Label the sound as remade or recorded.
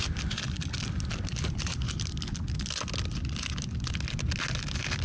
recorded